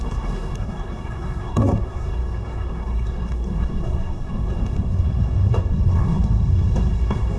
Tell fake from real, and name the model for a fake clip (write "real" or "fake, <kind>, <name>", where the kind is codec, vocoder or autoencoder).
fake, codec, SNAC